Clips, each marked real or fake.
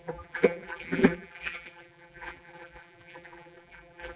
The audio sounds fake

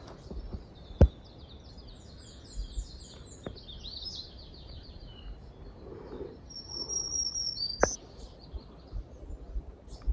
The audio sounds real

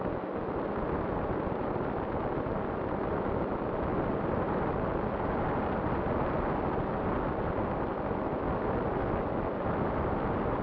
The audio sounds real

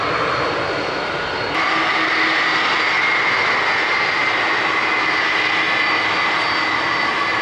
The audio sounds real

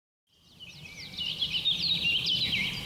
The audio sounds real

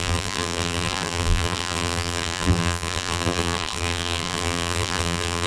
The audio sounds fake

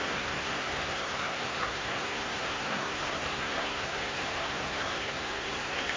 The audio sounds fake